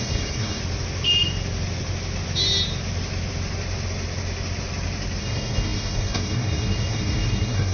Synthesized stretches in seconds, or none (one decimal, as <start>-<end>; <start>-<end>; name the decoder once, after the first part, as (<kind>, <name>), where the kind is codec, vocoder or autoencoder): 0.0-0.6 (codec, SNAC); 5.2-7.7